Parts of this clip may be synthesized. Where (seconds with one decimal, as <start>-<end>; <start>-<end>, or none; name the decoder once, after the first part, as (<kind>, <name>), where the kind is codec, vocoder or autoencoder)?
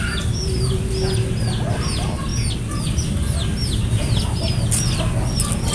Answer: none